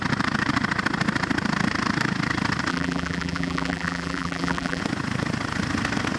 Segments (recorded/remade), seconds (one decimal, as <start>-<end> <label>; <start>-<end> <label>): 0.0-2.7 recorded; 2.7-4.8 remade; 4.8-6.2 recorded